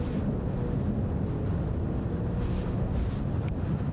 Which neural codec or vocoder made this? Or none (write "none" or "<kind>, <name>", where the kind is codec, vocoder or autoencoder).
none